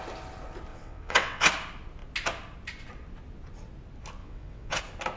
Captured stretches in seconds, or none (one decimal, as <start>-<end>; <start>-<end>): 0.0-0.7; 1.5-4.2; 4.8-5.2